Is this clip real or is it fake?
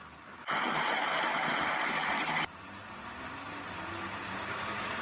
real